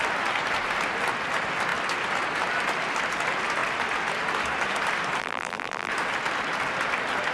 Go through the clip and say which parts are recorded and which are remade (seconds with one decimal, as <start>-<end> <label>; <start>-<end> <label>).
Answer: 0.0-5.2 recorded; 5.2-5.9 remade; 5.9-7.3 recorded